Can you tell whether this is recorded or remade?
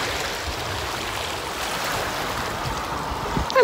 recorded